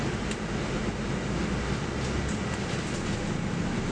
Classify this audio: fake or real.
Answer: real